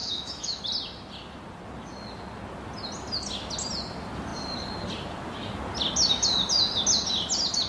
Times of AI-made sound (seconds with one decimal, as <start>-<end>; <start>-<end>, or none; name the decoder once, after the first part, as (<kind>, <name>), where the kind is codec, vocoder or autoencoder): 0.0-0.6 (autoencoder, DAC-VAE)